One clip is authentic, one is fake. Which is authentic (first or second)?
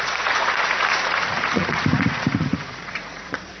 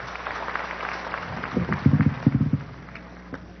second